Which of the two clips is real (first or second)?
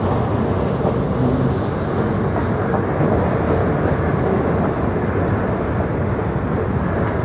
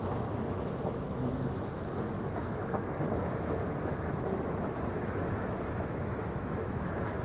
first